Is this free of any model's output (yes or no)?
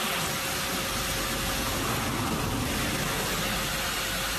yes